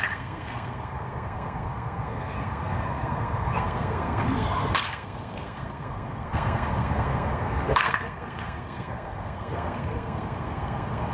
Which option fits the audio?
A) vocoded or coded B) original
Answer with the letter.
A